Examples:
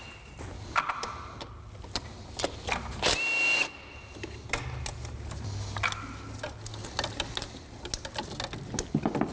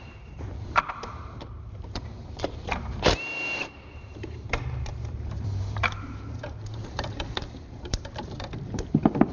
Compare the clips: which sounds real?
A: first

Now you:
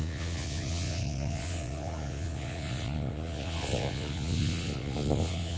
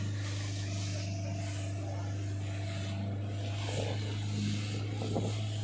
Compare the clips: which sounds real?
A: second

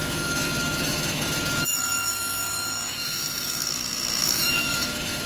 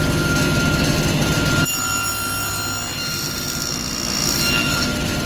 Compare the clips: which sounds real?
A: second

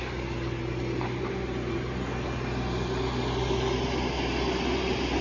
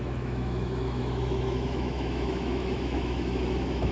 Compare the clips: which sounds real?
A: first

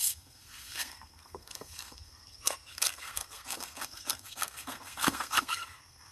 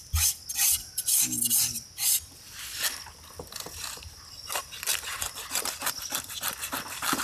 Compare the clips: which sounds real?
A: second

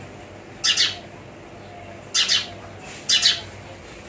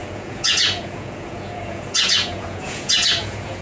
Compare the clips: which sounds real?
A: first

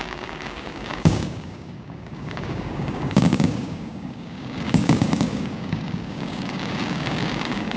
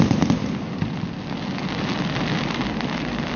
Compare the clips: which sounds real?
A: second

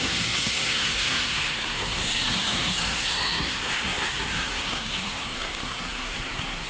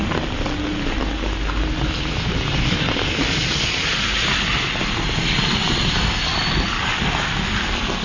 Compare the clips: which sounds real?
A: second